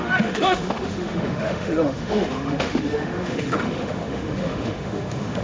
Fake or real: fake